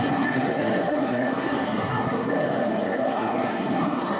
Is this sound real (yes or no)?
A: no